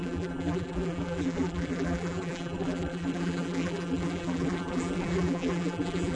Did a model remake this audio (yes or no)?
yes